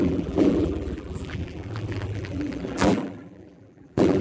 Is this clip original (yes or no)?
no